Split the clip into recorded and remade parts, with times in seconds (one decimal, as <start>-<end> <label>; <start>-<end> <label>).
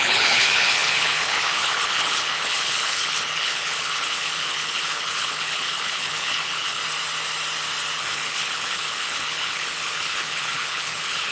0.0-6.8 remade; 6.8-8.0 recorded; 8.0-11.3 remade